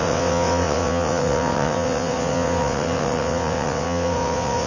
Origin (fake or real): fake